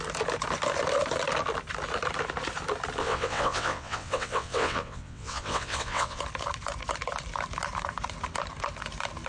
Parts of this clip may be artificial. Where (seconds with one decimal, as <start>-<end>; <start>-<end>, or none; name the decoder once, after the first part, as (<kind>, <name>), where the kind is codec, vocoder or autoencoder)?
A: 3.0-6.2 (vocoder, WaveNeXt)